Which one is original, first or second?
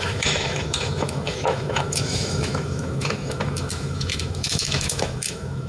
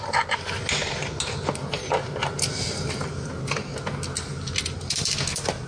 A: second